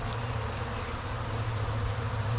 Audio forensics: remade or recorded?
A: remade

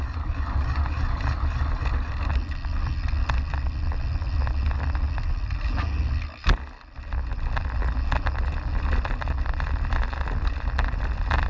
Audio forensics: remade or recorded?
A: recorded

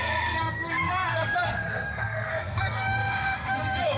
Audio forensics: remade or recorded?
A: remade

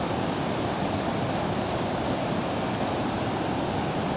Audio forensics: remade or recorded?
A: recorded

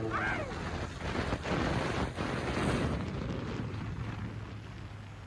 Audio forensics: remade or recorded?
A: recorded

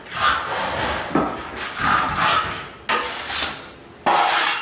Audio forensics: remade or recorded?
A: recorded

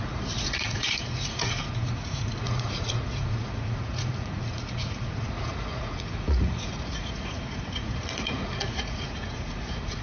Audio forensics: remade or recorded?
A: remade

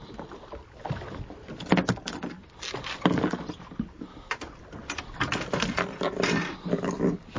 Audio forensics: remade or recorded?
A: recorded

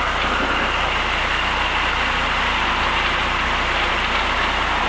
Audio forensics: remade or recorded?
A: recorded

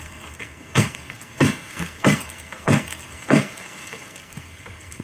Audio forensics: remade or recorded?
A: remade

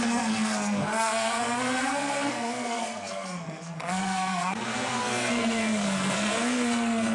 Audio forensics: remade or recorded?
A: remade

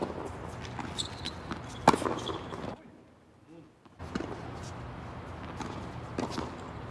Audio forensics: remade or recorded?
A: recorded